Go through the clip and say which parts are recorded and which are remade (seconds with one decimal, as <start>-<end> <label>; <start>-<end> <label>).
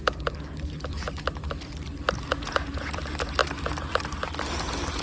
0.0-2.3 recorded; 2.3-2.9 remade; 2.9-5.0 recorded